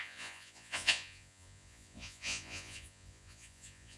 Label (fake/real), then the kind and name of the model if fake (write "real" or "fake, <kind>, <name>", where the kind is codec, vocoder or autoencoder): fake, vocoder, Vocos